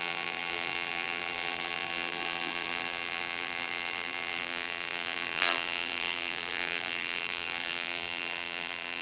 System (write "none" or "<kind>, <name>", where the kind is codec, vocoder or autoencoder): vocoder, BigVGAN v2